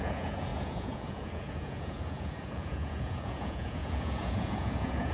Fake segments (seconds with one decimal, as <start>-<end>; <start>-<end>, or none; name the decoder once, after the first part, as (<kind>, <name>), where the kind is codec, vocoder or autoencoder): 0.0-5.1 (vocoder, Vocos)